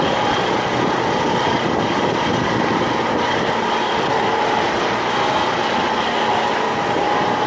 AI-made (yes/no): no